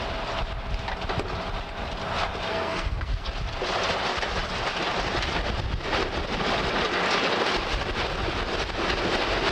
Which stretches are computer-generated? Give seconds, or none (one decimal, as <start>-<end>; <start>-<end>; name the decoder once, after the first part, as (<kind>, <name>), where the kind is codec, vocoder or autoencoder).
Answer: 2.5-3.3 (codec, SNAC)